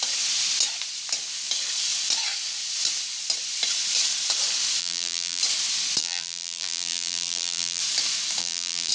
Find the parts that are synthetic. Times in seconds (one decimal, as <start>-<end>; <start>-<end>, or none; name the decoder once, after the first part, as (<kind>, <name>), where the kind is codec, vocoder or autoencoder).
4.8-5.4 (vocoder, BigVGAN v2); 6.0-7.8; 8.4-8.9